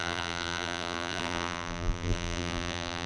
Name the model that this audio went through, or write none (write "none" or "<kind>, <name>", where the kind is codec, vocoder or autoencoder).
vocoder, BigVGAN v2